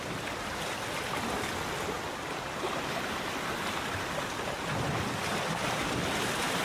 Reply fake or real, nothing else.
real